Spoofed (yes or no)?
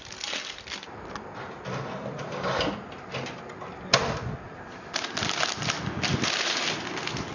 no